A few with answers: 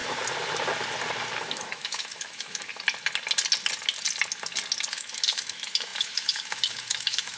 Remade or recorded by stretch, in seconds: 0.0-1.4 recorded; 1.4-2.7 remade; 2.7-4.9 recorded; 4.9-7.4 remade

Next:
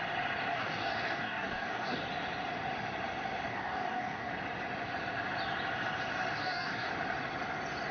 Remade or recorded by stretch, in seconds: 0.0-0.5 recorded; 0.5-2.0 remade; 2.0-3.5 recorded; 3.5-4.3 remade; 4.3-6.4 recorded; 6.4-6.9 remade; 6.9-7.9 recorded

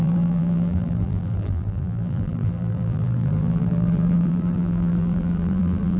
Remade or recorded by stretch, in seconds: 0.0-6.0 remade

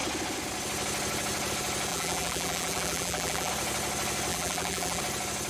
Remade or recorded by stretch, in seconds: 0.0-1.9 recorded; 1.9-3.5 remade; 3.5-4.3 recorded; 4.3-5.0 remade; 5.0-5.5 recorded

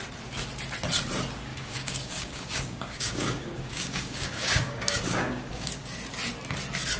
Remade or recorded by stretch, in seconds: 0.0-1.5 recorded; 1.5-5.7 remade; 5.7-7.0 recorded

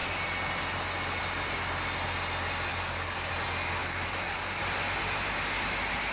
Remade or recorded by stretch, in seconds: 0.0-2.7 recorded; 2.7-3.3 remade; 3.3-3.8 recorded; 3.8-4.6 remade; 4.6-6.1 recorded